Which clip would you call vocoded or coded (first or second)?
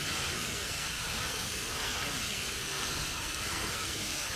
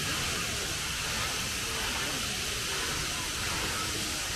first